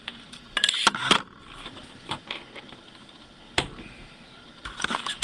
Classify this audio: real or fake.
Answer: fake